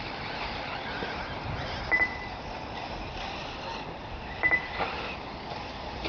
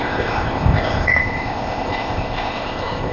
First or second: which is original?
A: first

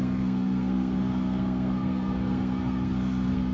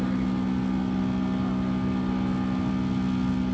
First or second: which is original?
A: second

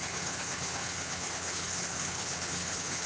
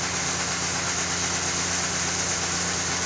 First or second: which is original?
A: second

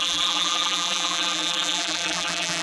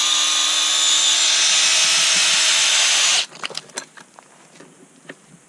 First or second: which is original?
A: second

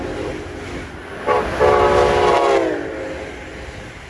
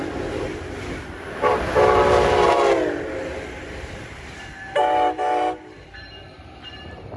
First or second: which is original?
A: first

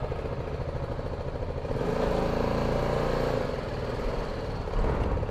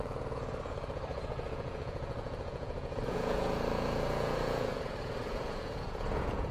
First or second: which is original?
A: first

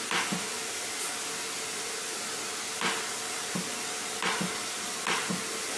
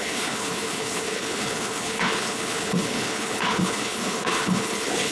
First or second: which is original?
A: first